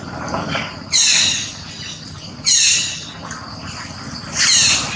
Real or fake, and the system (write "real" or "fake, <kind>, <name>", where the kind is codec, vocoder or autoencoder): real